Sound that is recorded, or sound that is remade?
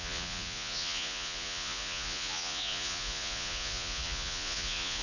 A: remade